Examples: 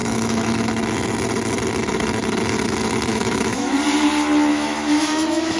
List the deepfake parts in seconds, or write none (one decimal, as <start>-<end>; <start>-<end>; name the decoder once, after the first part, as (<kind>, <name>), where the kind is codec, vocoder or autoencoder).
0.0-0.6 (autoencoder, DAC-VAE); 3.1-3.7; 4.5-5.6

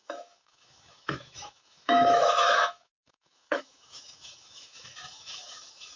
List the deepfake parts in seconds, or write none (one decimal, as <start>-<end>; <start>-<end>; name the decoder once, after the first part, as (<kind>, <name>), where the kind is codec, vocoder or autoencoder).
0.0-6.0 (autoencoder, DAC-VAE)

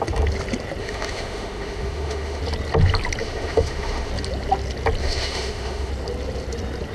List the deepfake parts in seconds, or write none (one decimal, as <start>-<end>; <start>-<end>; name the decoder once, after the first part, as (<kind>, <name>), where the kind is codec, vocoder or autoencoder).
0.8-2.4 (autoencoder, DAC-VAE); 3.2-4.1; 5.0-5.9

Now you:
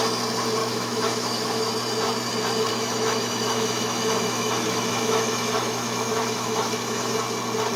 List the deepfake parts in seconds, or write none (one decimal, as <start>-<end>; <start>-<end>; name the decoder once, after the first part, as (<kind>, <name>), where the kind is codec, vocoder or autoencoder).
0.6-1.7 (autoencoder, DAC-VAE); 2.7-7.1

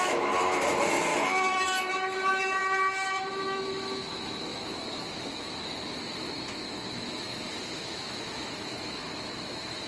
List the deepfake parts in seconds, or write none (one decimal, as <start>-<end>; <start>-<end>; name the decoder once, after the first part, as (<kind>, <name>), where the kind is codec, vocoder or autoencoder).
0.0-2.6 (autoencoder, DAC-VAE); 3.3-9.9